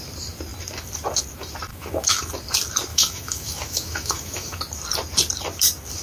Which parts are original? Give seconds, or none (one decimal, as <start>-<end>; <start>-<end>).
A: 0.0-1.7; 2.3-2.9; 4.6-6.0